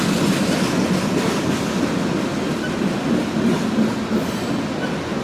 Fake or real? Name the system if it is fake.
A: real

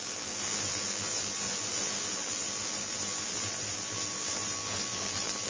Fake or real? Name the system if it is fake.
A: fake, vocoder, BigVGAN v2